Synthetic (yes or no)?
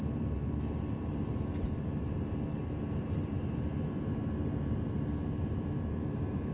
yes